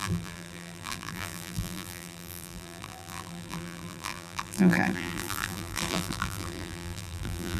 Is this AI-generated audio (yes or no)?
yes